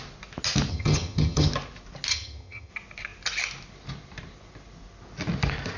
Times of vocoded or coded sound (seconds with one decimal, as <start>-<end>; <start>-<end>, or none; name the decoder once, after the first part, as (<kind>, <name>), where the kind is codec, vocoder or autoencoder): 0.7-1.5 (vocoder, HiFi-GAN); 2.1-2.7